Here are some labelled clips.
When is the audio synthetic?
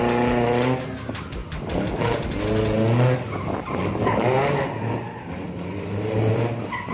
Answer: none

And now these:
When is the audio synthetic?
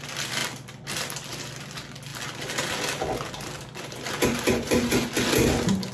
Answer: 4.5-5.1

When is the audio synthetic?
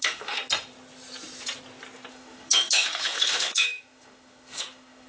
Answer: 0.0-0.4; 2.1-5.1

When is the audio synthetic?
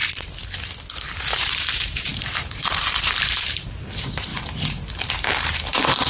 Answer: 1.0-4.3; 5.1-6.1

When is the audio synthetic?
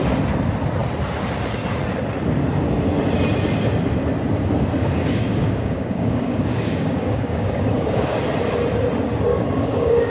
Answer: 4.8-8.2; 9.3-10.1